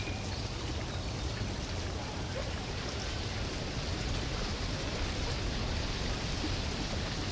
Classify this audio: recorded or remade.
recorded